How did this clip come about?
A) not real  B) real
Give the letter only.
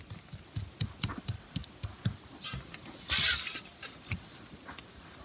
B